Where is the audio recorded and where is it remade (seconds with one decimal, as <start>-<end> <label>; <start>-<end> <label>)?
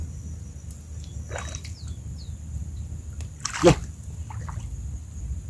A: 0.0-2.2 recorded; 2.2-5.5 remade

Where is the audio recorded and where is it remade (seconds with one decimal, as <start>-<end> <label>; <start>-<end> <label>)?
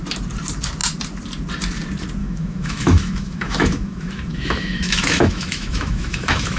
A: 0.0-2.2 recorded; 2.2-6.6 remade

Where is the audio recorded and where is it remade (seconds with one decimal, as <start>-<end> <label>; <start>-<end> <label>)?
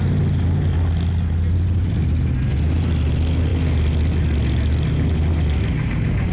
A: 0.0-6.3 recorded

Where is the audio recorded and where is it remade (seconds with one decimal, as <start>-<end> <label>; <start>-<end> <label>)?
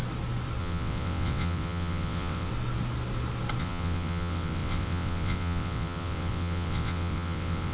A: 0.0-0.6 recorded; 0.6-2.5 remade; 2.5-3.6 recorded; 3.6-7.7 remade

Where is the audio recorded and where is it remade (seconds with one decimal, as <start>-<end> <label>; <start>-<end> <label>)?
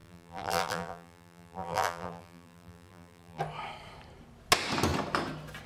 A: 0.0-3.4 remade; 3.4-5.7 recorded